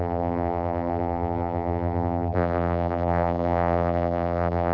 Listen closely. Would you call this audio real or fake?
fake